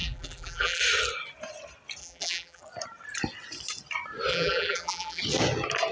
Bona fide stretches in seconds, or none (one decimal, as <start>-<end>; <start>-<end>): 0.8-2.0; 2.6-4.3; 5.2-5.9

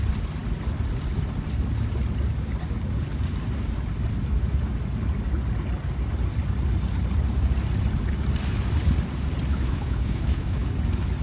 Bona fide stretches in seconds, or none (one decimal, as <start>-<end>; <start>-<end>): 0.0-9.5; 10.7-11.2

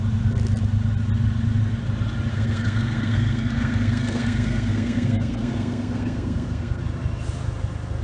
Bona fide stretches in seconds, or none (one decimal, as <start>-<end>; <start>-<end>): 0.0-2.3; 6.8-8.0

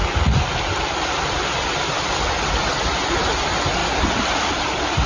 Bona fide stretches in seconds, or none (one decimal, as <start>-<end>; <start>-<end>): 3.1-3.8

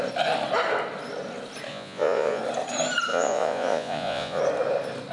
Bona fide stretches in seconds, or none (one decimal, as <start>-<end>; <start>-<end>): 0.0-1.7; 2.4-3.1; 4.4-5.1

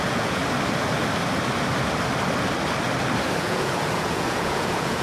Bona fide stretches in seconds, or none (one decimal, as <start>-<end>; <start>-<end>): 0.4-3.4

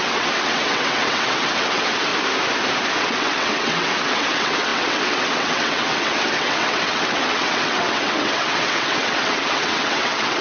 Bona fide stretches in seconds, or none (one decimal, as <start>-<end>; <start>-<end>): 2.1-3.0

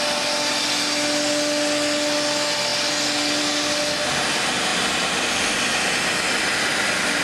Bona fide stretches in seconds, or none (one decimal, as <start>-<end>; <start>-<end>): 0.0-7.2